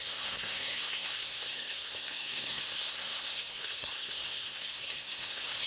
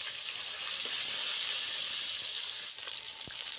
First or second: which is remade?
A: first